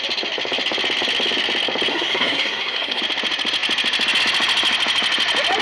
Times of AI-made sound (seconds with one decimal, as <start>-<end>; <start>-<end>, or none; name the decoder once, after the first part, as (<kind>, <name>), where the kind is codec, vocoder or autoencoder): 1.9-3.0 (codec, SNAC)